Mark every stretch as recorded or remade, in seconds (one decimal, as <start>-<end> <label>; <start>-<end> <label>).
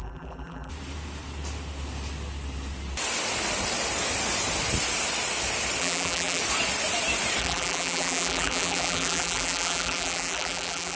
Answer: 0.0-0.7 remade; 0.7-5.8 recorded; 5.8-6.4 remade; 6.4-7.4 recorded; 7.4-11.0 remade